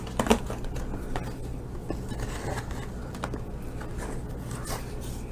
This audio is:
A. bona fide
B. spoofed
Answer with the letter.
A